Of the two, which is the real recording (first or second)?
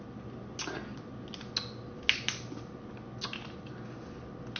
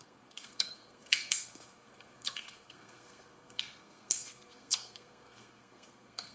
first